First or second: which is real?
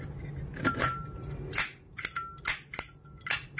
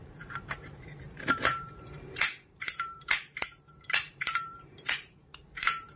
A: first